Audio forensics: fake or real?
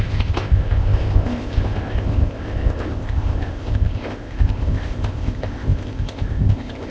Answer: fake